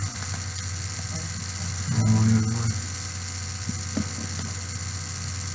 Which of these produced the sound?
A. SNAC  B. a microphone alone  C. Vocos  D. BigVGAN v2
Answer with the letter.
B